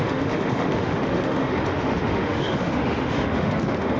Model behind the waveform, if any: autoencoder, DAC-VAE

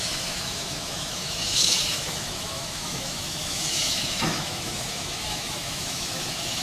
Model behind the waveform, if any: autoencoder, DAC-VAE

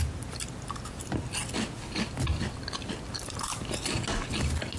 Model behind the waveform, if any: none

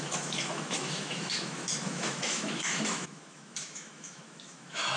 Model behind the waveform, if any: autoencoder, DAC-VAE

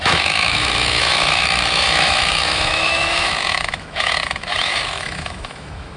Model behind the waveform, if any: autoencoder, DAC-VAE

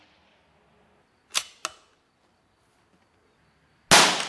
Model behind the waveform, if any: none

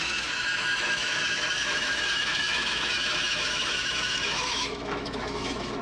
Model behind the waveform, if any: autoencoder, DAC-VAE